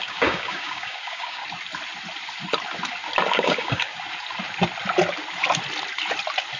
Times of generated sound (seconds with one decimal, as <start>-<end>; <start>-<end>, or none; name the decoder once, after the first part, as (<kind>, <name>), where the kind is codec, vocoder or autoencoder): 0.0-1.4 (codec, DAC); 3.3-3.9